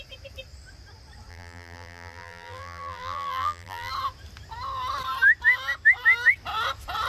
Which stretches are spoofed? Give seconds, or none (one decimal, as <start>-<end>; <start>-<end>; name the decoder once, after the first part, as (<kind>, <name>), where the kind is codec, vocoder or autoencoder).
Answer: 1.3-3.9 (vocoder, BigVGAN v2)

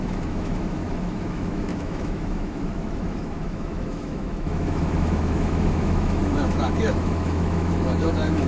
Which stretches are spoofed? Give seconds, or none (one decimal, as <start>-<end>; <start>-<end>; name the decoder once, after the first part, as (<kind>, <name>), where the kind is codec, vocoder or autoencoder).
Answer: 0.0-8.5 (autoencoder, DAC-VAE)